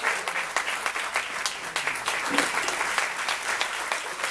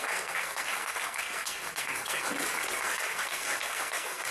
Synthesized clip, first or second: second